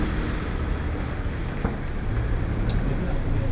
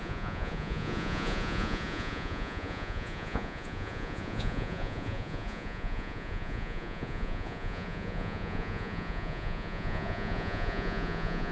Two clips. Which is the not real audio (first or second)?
second